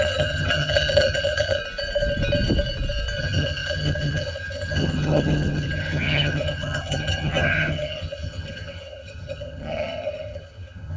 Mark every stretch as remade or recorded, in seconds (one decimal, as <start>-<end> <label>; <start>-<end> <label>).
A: 0.0-1.6 remade; 1.6-3.2 recorded; 3.2-11.0 remade